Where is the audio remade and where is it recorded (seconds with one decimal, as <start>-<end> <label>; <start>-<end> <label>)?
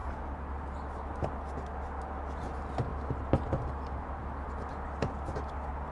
0.0-5.9 recorded